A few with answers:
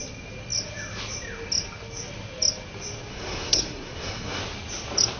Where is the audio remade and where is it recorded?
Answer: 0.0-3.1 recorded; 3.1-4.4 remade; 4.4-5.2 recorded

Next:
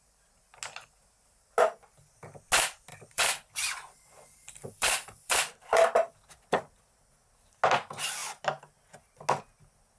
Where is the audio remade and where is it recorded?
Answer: 0.0-2.9 recorded; 2.9-6.4 remade; 6.4-10.0 recorded

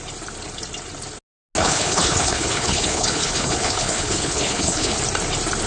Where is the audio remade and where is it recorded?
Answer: 0.0-1.6 recorded; 1.6-5.0 remade; 5.0-5.7 recorded

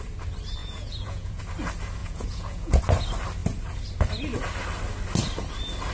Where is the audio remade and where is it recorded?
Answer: 0.0-0.6 recorded; 0.6-1.4 remade; 1.4-2.0 recorded; 2.0-2.8 remade; 2.8-5.9 recorded

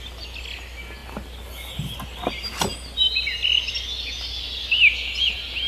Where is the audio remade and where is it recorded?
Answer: 0.0-5.7 recorded

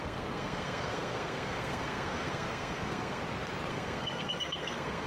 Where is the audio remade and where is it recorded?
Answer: 0.0-3.2 remade; 3.2-3.7 recorded; 3.7-5.1 remade

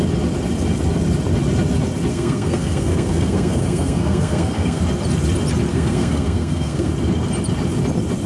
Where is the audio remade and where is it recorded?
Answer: 0.0-2.1 recorded; 2.1-4.8 remade; 4.8-5.7 recorded; 5.7-6.9 remade; 6.9-8.3 recorded

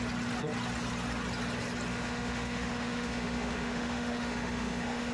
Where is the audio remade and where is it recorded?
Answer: 0.0-1.9 recorded; 1.9-5.1 remade